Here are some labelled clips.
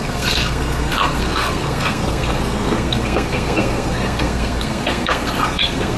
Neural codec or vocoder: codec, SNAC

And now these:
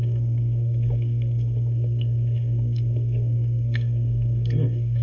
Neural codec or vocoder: codec, SNAC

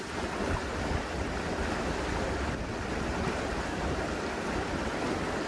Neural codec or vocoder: none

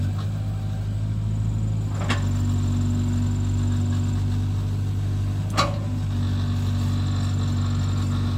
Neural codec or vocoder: none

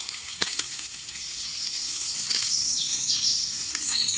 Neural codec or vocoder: codec, SNAC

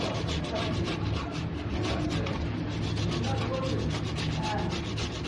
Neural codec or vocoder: none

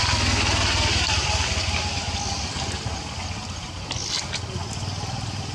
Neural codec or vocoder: none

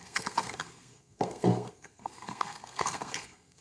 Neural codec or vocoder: codec, SNAC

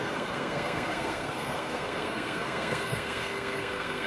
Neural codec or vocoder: codec, SNAC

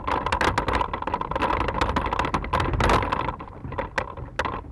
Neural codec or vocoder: none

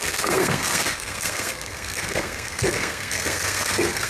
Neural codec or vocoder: codec, SNAC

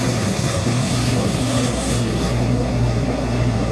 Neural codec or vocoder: codec, SNAC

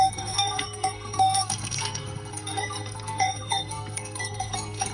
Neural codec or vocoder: codec, SNAC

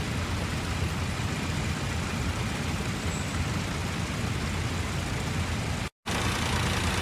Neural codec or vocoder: none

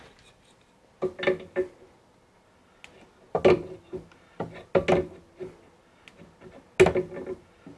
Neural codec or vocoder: none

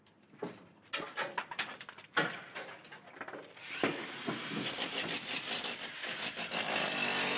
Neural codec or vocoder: none